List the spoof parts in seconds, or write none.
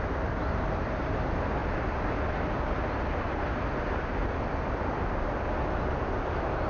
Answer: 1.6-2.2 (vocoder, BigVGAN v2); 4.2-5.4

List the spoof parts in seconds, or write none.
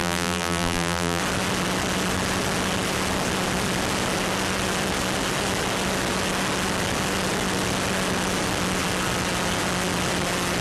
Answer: 0.0-1.2 (vocoder, BigVGAN v2)